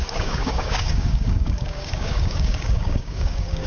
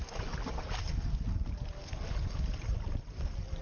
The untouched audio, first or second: second